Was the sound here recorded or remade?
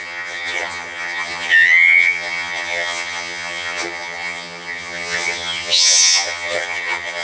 remade